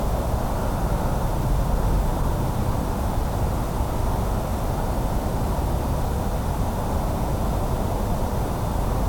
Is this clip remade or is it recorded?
recorded